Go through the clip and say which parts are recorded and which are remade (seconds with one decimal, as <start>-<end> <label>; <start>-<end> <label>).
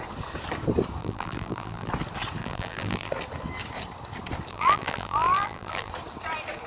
0.0-1.0 recorded; 1.0-1.9 remade; 1.9-2.4 recorded; 2.4-3.1 remade; 3.1-4.5 recorded; 4.5-5.9 remade; 5.9-6.7 recorded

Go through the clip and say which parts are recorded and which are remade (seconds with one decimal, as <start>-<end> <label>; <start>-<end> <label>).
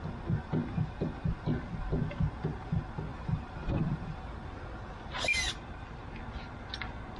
0.0-0.6 recorded; 0.6-1.3 remade; 1.3-3.1 recorded; 3.1-4.3 remade; 4.3-5.3 recorded; 5.3-6.2 remade; 6.2-7.2 recorded